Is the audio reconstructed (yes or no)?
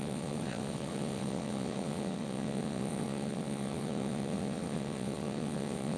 yes